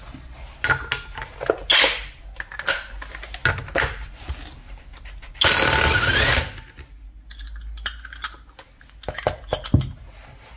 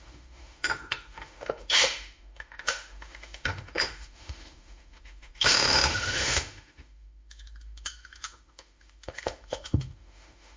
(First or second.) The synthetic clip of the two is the second